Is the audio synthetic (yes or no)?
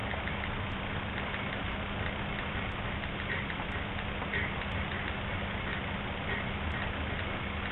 no